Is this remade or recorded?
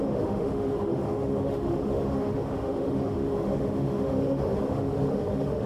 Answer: remade